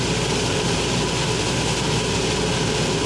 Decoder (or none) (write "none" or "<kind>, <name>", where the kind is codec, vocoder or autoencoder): none